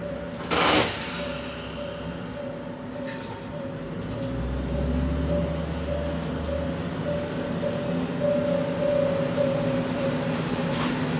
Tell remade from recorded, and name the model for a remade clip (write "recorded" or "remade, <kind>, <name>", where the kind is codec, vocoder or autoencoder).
recorded